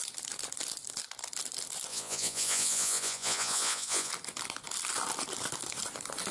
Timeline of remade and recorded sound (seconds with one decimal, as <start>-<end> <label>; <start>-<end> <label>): 0.0-1.9 recorded; 1.9-4.1 remade; 4.1-6.3 recorded